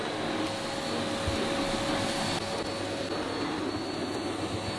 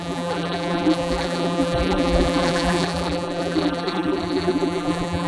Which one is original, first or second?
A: first